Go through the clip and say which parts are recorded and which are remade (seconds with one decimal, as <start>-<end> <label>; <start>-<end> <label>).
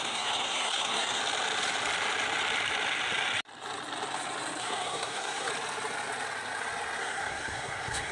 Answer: 0.0-1.2 remade; 1.2-4.6 recorded; 4.6-5.5 remade; 5.5-7.0 recorded; 7.0-8.1 remade